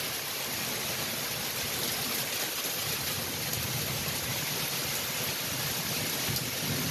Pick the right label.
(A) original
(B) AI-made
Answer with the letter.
A